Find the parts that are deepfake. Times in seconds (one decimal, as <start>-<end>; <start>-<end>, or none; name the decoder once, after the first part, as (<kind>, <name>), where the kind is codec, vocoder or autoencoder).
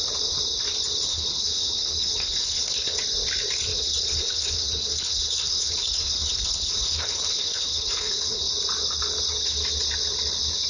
1.1-3.0 (codec, HILCodec); 3.7-8.5